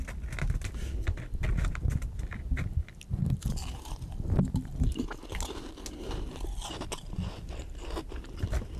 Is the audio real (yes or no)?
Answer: yes